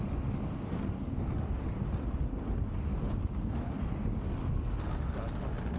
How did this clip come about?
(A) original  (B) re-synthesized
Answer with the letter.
A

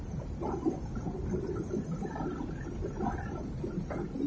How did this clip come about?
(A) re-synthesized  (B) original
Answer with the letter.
B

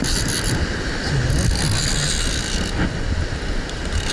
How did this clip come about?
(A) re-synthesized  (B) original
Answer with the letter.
B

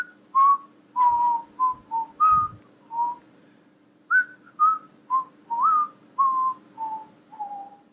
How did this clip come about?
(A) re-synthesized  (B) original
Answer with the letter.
B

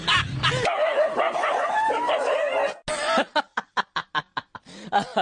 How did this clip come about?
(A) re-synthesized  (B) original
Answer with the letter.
B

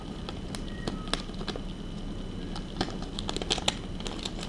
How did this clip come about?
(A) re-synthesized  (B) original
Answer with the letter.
B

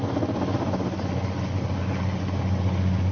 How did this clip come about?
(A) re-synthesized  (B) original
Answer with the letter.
B